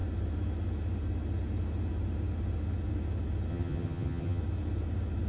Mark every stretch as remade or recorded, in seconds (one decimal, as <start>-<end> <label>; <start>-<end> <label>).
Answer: 0.0-3.5 recorded; 3.5-4.4 remade; 4.4-5.3 recorded